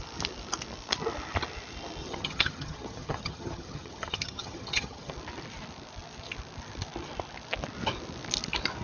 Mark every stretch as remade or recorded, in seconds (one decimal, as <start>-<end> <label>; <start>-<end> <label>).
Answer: 0.0-2.0 recorded; 2.0-5.1 remade; 5.1-8.8 recorded